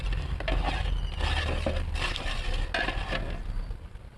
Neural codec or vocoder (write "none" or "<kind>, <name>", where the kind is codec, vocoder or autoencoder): none